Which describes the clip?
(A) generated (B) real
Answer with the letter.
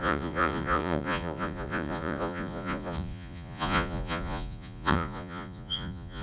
A